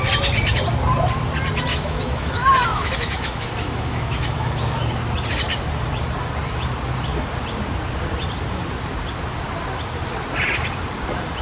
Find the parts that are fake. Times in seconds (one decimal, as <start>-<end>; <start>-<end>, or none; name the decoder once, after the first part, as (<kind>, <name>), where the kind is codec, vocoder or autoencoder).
1.7-4.9 (autoencoder, DAC-VAE)